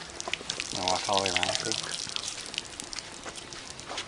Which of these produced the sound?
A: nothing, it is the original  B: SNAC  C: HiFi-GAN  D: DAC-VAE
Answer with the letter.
A